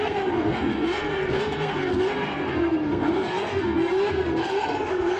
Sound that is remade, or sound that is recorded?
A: remade